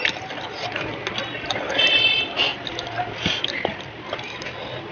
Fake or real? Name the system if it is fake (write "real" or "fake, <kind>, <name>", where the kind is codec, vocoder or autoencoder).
real